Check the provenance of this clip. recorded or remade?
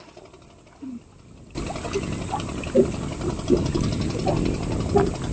recorded